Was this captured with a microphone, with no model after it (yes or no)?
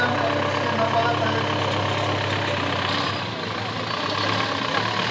yes